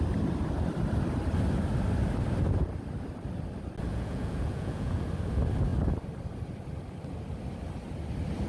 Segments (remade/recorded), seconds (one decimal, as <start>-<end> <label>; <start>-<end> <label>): 0.0-3.9 recorded; 3.9-5.0 remade; 5.0-8.5 recorded